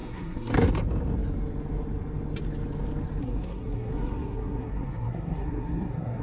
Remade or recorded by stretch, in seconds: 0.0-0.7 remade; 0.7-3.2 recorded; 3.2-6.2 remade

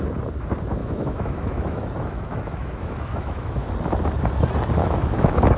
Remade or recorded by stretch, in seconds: 0.0-0.8 recorded; 0.8-3.7 remade; 3.7-4.8 recorded; 4.8-5.6 remade

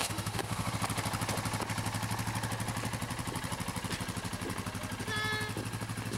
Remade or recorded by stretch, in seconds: 0.0-0.7 remade; 0.7-6.2 recorded

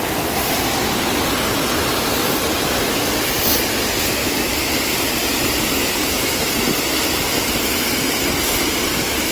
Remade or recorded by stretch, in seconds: 0.0-4.2 recorded; 4.2-4.7 remade; 4.7-6.0 recorded; 6.0-6.5 remade; 6.5-9.3 recorded

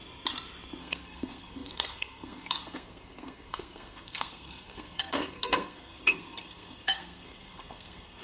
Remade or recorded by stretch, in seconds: 0.0-0.8 recorded; 0.8-8.2 remade

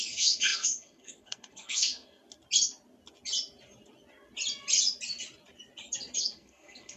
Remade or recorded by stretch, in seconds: 0.0-2.2 remade; 2.2-6.2 recorded; 6.2-7.0 remade

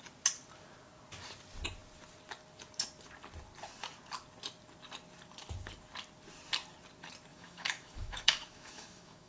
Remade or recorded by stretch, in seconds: 0.0-7.3 recorded; 7.3-9.3 remade

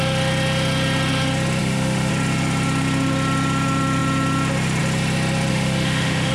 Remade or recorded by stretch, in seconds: 0.0-1.6 recorded; 1.6-2.1 remade; 2.1-5.5 recorded; 5.5-6.3 remade